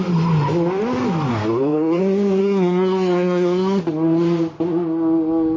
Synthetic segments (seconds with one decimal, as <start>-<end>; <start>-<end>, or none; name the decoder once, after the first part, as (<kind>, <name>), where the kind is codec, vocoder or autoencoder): 1.3-2.0 (codec, SNAC); 2.4-3.8